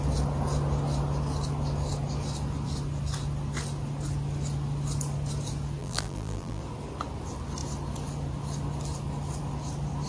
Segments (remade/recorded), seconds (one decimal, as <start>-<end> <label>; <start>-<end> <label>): 0.0-5.8 recorded; 5.8-6.6 remade; 6.6-10.1 recorded